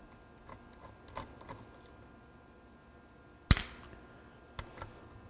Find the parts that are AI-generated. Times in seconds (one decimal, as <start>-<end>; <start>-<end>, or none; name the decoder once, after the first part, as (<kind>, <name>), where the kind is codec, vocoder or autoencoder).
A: none